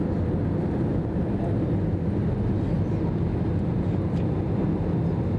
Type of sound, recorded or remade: recorded